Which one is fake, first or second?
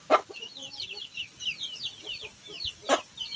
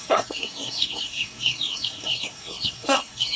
second